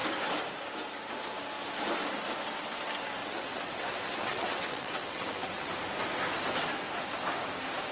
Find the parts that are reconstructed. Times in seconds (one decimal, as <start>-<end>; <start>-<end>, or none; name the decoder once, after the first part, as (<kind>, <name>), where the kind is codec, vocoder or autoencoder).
3.2-5.7 (vocoder, WaveNeXt)